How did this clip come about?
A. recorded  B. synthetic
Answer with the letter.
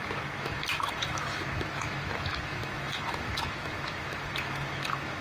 B